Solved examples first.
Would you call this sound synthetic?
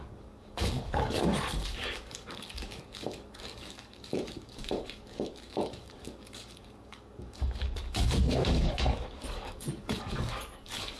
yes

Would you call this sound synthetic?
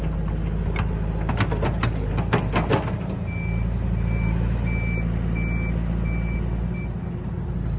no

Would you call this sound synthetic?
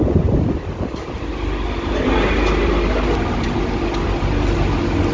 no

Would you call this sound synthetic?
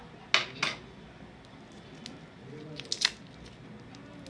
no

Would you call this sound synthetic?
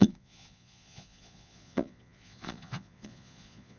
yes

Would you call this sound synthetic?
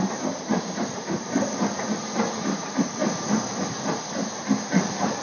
yes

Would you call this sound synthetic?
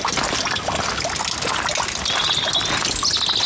no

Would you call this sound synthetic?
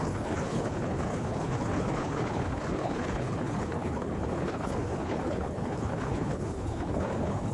yes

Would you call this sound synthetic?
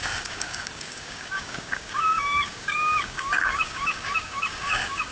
yes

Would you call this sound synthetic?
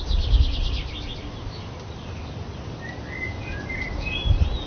no